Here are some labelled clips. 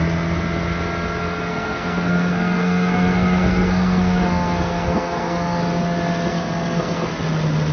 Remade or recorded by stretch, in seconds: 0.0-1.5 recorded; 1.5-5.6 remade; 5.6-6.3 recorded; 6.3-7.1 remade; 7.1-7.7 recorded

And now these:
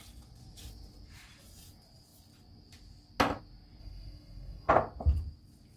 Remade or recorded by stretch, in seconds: 0.0-3.8 recorded; 3.8-4.7 remade; 4.7-5.8 recorded